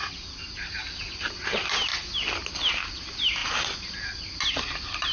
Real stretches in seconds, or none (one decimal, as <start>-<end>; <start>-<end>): 0.0-5.1